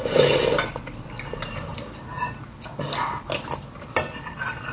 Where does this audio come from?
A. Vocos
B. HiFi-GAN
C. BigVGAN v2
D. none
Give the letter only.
C